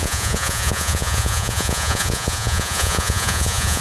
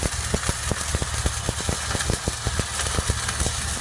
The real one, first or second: second